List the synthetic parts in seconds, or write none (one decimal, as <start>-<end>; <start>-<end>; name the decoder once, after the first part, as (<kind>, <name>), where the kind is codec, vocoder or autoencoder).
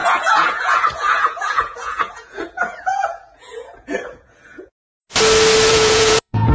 0.0-4.7 (vocoder, Vocos); 5.7-6.5